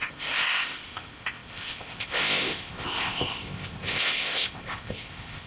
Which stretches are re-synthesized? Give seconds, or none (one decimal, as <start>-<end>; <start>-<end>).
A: 0.0-5.5